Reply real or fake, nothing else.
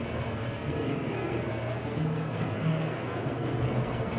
fake